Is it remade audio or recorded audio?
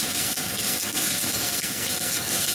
remade